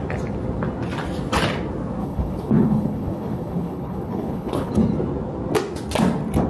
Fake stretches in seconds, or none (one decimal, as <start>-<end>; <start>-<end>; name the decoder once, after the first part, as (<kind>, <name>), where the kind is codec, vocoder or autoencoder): 2.0-4.7 (codec, HILCodec)